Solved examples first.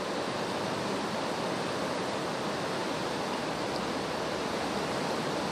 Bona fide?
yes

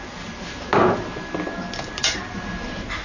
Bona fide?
yes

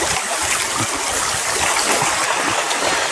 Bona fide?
yes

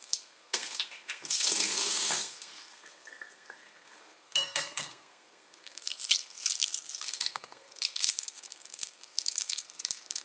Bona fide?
no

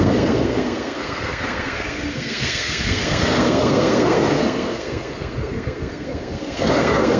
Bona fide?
no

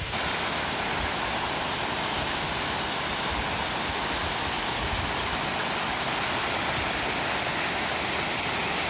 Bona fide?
yes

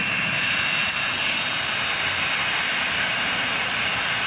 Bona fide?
yes